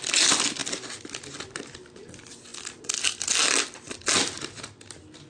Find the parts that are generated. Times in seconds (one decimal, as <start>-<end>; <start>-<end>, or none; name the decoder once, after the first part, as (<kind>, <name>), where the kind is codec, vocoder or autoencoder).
none